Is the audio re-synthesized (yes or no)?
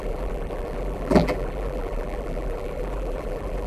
yes